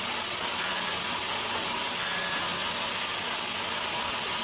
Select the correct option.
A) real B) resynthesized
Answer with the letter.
A